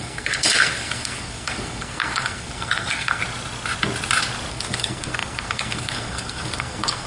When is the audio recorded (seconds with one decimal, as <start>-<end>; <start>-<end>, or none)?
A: 3.2-4.5